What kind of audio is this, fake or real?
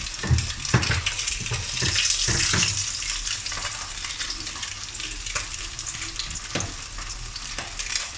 real